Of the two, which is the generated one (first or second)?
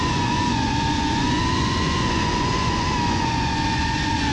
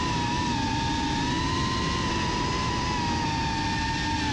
first